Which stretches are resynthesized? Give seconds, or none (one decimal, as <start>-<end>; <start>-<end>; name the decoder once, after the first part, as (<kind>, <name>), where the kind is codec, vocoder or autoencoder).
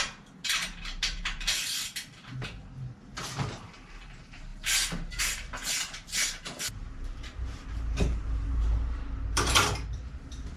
0.0-10.6 (vocoder, BigVGAN v2)